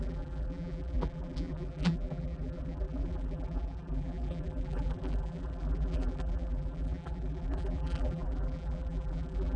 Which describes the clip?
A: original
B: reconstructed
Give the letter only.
B